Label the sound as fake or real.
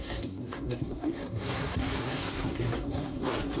fake